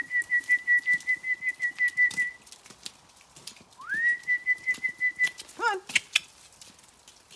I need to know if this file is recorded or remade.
recorded